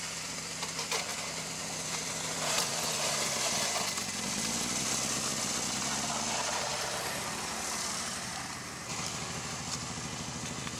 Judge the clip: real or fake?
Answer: real